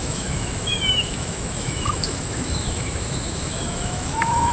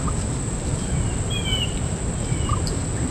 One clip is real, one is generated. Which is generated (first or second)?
first